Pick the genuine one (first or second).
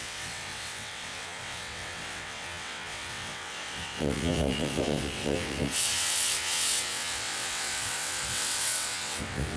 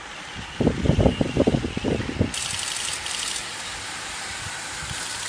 second